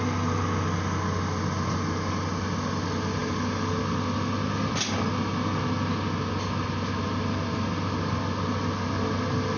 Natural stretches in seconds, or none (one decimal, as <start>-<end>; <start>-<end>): 0.0-9.6